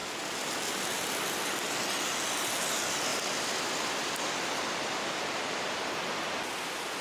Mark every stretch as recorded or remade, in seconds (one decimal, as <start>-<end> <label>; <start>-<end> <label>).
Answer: 0.0-1.0 remade; 1.0-7.0 recorded